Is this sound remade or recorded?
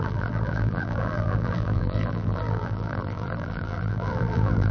remade